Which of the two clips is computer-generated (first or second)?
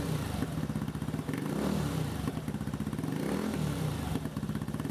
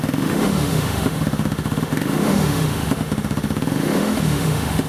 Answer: second